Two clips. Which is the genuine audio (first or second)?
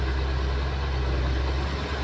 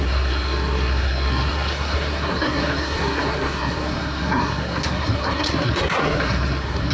first